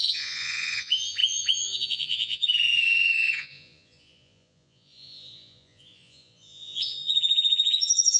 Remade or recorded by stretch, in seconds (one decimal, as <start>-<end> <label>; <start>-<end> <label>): 0.0-8.2 remade